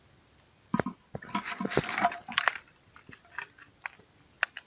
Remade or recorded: recorded